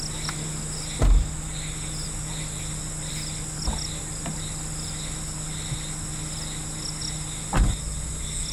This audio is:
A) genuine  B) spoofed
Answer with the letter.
A